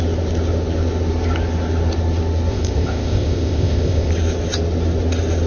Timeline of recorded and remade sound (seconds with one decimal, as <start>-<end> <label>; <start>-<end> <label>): 0.0-2.5 recorded; 2.5-4.1 remade; 4.1-5.5 recorded